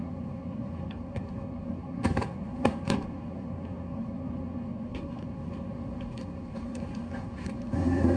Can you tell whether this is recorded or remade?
remade